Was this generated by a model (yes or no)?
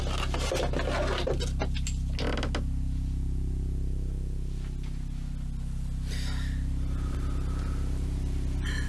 no